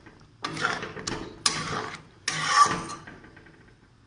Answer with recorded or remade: recorded